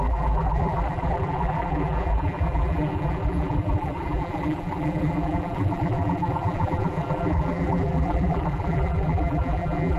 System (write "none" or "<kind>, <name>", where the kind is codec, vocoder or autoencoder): vocoder, BigVGAN v2